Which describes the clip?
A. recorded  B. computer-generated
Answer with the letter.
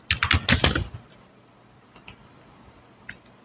A